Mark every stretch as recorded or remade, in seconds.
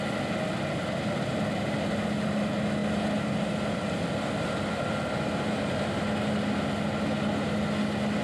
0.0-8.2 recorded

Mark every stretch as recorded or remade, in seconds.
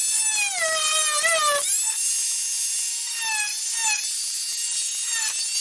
0.0-3.8 recorded; 3.8-4.4 remade; 4.4-5.6 recorded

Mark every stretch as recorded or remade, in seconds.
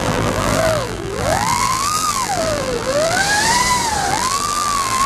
0.0-3.2 remade; 3.2-4.1 recorded; 4.1-5.1 remade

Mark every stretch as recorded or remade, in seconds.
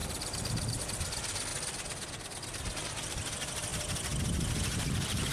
0.0-5.3 recorded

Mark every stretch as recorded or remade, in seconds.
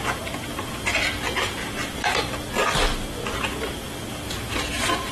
0.0-1.6 recorded; 1.6-2.2 remade; 2.2-5.1 recorded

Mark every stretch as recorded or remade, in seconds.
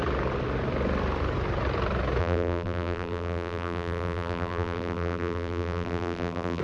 0.0-2.2 recorded; 2.2-6.6 remade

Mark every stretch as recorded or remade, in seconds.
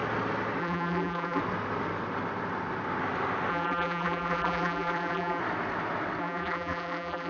0.0-0.6 recorded; 0.6-1.4 remade; 1.4-3.5 recorded; 3.5-5.4 remade; 5.4-6.2 recorded; 6.2-7.3 remade